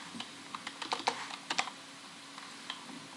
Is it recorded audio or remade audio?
recorded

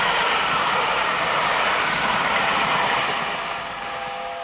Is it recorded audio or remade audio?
recorded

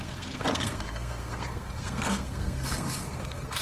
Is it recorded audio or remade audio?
remade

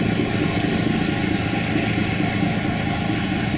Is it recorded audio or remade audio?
recorded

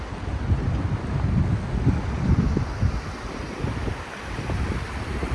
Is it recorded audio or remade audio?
recorded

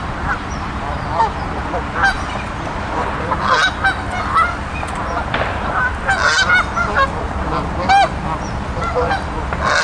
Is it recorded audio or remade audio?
recorded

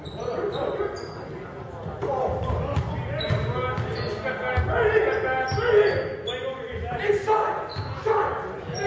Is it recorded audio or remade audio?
recorded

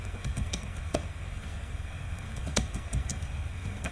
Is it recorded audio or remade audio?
remade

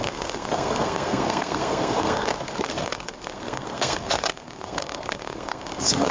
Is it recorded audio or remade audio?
remade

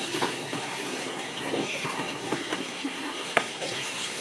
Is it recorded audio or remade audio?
remade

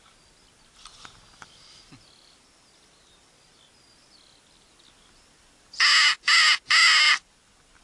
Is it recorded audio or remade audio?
recorded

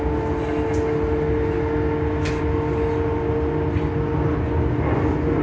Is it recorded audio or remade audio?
recorded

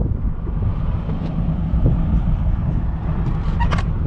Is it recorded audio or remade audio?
recorded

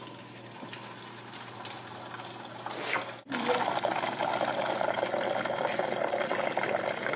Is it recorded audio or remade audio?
recorded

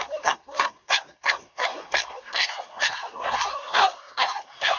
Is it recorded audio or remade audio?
remade